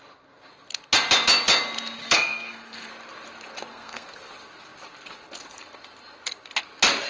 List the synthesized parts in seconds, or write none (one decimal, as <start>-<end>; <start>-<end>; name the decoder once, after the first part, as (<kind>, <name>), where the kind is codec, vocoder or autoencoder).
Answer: 2.0-2.9 (codec, SNAC); 3.7-4.3